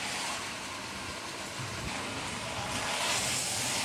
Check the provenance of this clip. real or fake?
real